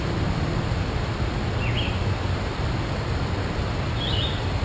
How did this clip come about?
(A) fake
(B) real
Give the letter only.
B